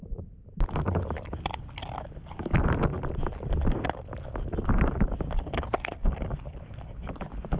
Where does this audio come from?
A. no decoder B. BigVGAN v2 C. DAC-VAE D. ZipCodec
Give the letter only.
A